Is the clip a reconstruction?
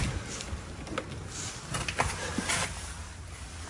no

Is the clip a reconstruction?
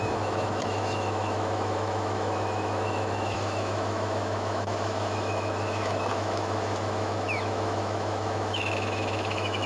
yes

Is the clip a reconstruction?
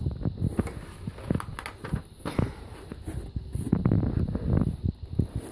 no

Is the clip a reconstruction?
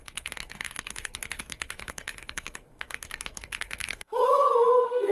yes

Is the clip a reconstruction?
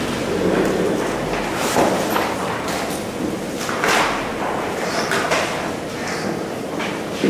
no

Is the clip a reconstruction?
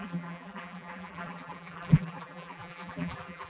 yes